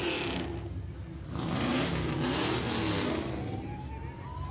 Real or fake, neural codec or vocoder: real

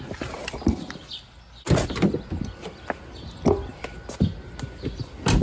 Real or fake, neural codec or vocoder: real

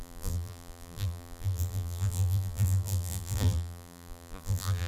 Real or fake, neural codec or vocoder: fake, vocoder, BigVGAN v2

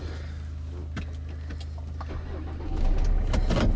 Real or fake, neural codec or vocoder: real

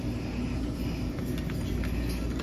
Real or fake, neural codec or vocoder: real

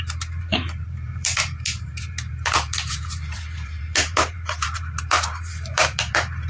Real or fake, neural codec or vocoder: fake, vocoder, BigVGAN v2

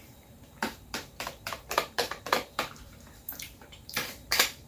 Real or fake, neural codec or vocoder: fake, vocoder, BigVGAN v2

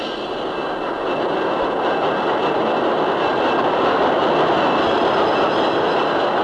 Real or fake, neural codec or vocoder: real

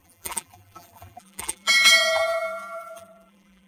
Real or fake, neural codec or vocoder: fake, vocoder, BigVGAN v2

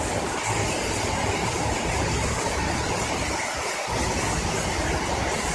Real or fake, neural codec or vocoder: real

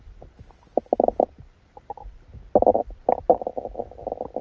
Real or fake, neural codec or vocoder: fake, vocoder, BigVGAN v2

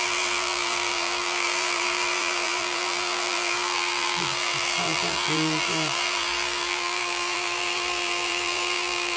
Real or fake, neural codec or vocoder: fake, vocoder, BigVGAN v2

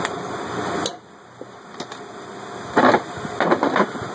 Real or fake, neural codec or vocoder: real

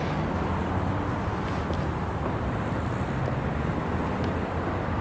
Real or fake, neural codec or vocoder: real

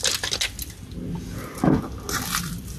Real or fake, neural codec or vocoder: real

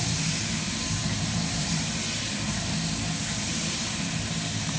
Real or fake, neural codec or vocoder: fake, vocoder, BigVGAN v2